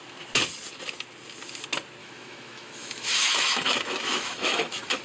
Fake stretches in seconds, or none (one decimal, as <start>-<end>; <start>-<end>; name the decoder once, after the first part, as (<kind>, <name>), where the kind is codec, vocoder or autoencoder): 2.0-5.0 (autoencoder, DAC-VAE)